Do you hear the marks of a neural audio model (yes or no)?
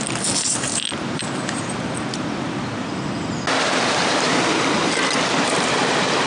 no